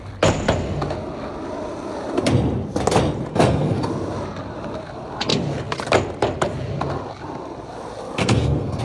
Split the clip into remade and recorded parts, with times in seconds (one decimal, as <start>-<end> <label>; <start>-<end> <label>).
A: 0.0-3.3 recorded; 3.3-3.9 remade; 3.9-8.2 recorded; 8.2-8.8 remade